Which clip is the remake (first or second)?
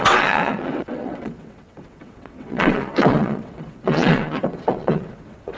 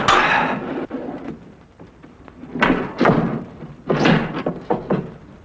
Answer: first